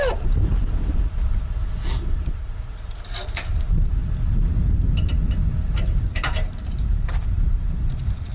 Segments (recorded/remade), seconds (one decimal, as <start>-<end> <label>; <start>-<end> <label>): 0.0-0.5 remade; 0.5-2.0 recorded; 2.0-4.0 remade; 4.0-5.8 recorded; 5.8-8.3 remade